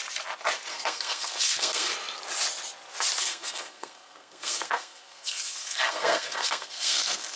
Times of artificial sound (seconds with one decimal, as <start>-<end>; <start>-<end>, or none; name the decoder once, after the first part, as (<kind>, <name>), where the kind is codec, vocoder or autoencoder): 0.7-1.9 (codec, SNAC); 3.2-7.4